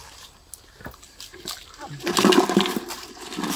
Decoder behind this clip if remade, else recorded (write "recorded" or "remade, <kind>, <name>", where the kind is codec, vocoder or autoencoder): recorded